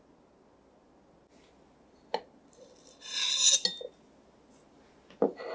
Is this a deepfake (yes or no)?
no